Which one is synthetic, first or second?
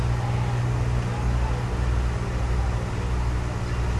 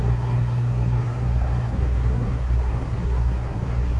second